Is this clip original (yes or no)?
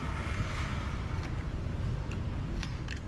yes